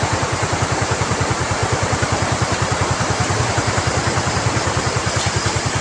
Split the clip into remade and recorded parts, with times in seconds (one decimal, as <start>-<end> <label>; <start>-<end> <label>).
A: 0.0-5.8 recorded